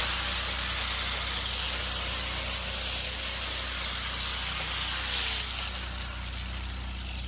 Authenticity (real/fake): real